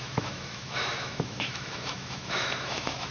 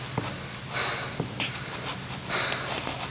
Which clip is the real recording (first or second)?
second